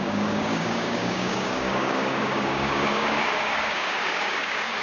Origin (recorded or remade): remade